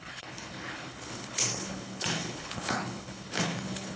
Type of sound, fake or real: fake